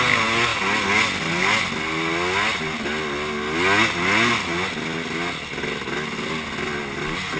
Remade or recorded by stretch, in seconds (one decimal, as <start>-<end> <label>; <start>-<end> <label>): 0.0-7.4 recorded